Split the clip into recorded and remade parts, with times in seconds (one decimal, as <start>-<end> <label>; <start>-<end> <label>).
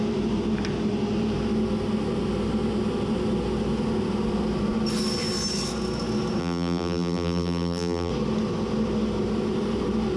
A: 0.0-6.4 recorded; 6.4-8.1 remade; 8.1-10.2 recorded